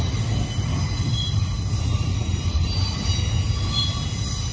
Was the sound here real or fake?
real